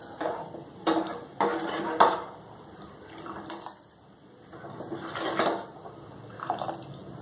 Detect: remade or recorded recorded